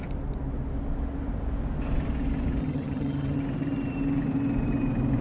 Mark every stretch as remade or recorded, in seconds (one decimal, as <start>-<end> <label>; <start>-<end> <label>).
0.0-2.6 recorded; 2.6-3.4 remade; 3.4-5.2 recorded